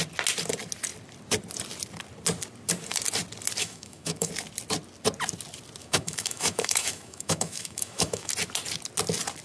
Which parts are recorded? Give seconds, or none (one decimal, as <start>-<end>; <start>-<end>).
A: 0.0-3.6; 4.3-5.8; 8.3-9.4